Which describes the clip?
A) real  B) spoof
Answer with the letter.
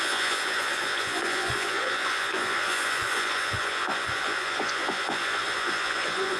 B